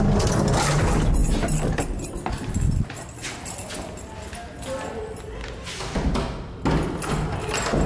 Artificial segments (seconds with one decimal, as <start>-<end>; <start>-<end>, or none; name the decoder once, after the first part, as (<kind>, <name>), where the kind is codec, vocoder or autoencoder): none